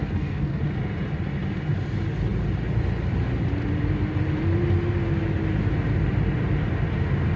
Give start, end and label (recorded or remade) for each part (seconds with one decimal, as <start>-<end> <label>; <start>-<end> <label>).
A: 0.0-0.6 remade; 0.6-7.4 recorded